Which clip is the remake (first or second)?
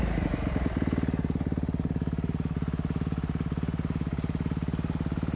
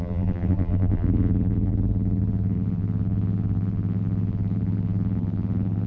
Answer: second